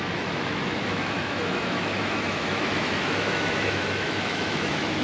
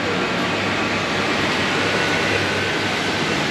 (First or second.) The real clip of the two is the second